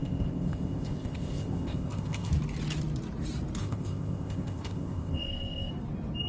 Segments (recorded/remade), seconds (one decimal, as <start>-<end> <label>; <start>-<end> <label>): 0.0-2.3 remade; 2.3-3.6 recorded; 3.6-5.7 remade; 5.7-6.3 recorded